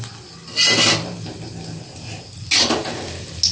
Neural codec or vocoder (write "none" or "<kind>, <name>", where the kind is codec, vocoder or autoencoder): none